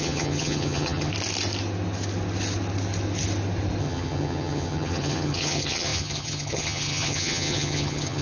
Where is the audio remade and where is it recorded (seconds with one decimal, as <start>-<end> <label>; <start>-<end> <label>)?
0.0-1.1 remade; 1.1-3.8 recorded; 3.8-8.2 remade